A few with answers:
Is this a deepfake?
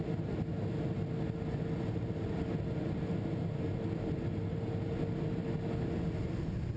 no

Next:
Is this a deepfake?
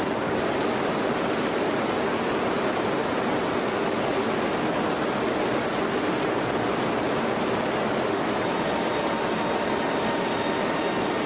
no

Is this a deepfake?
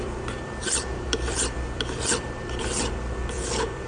yes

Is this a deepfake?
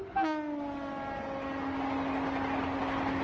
no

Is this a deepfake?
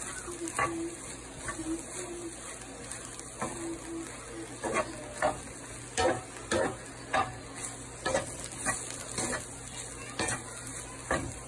no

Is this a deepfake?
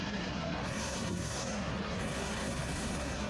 yes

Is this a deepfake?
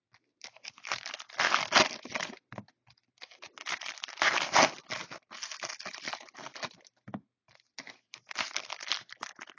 no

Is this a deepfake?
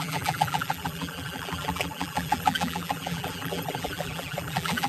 yes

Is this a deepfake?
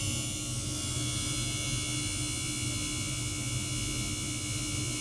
no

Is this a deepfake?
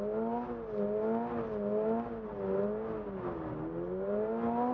no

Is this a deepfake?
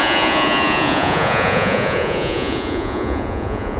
yes